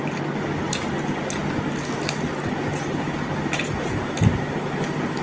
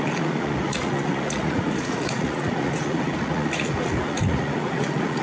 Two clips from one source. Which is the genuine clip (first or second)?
first